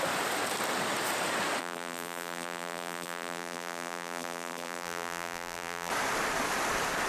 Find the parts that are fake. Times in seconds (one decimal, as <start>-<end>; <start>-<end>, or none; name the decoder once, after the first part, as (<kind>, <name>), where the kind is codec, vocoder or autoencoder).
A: 1.6-5.9 (vocoder, BigVGAN v2)